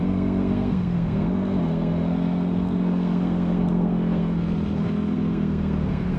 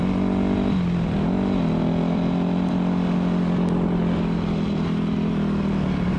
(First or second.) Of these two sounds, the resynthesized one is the first